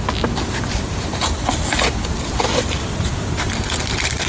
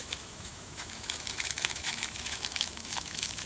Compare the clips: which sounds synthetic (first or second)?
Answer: second